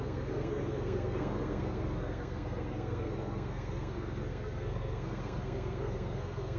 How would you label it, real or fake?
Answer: fake